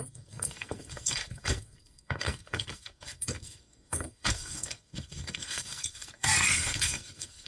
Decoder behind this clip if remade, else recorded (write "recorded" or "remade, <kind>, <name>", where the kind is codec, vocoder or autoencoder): remade, codec, SNAC